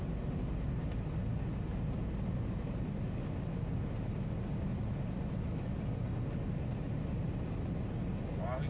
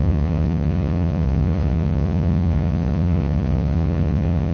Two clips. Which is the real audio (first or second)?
first